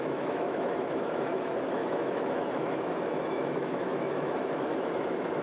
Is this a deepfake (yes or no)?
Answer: yes